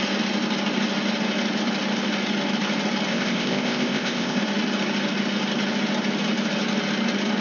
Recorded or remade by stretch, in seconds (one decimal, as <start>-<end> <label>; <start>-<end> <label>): 0.0-3.1 recorded; 3.1-4.4 remade; 4.4-7.4 recorded